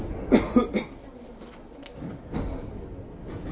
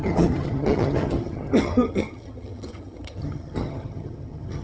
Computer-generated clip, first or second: second